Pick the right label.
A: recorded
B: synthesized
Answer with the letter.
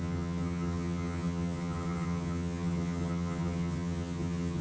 B